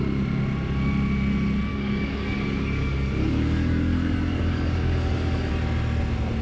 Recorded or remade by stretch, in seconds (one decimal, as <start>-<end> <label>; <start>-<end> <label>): 0.0-1.7 recorded; 1.7-5.5 remade; 5.5-6.4 recorded